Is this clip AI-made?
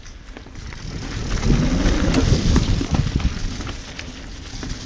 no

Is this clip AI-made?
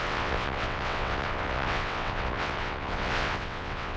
yes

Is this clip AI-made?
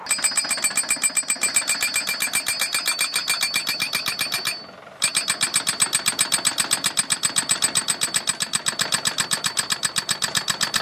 yes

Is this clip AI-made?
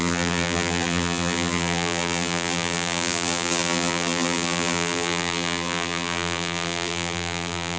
yes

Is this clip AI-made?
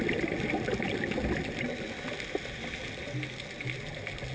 no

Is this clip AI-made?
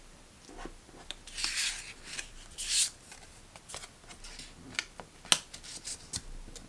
no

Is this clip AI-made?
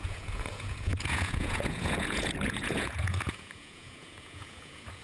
yes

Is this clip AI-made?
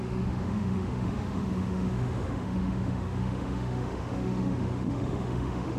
yes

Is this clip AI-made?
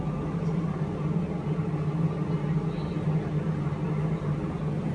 no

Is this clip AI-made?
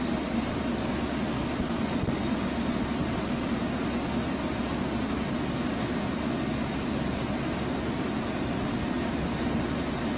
no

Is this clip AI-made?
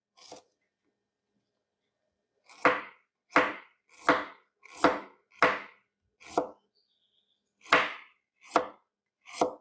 no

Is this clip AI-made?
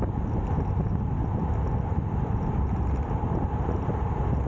no